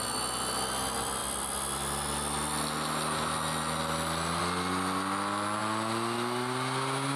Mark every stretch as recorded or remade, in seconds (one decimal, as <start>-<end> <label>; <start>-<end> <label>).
0.0-7.2 recorded